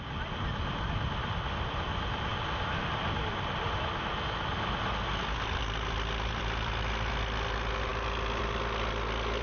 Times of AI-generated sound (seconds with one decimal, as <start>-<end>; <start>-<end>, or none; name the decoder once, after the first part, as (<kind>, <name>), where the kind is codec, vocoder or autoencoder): none